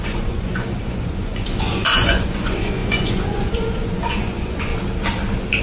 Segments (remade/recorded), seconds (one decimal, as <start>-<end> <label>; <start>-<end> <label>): 0.0-4.7 remade; 4.7-5.6 recorded